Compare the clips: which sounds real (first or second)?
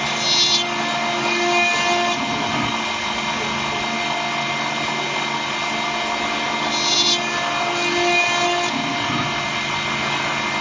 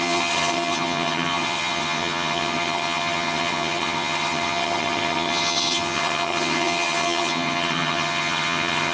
first